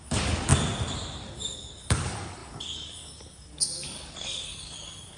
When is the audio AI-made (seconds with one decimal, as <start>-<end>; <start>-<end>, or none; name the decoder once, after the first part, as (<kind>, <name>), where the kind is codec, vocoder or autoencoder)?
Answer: 0.0-0.5 (codec, DAC); 1.3-5.2